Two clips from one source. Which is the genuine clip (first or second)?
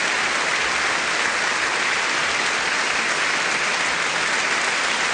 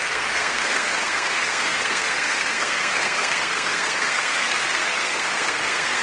first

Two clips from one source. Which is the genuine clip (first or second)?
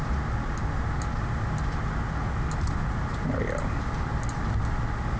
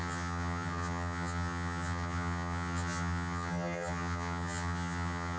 first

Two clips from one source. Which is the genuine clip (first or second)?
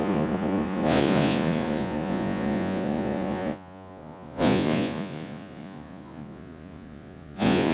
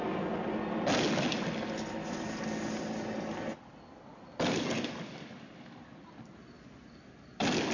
second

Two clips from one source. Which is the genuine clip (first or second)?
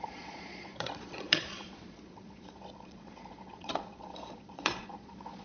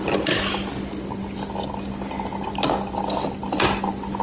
second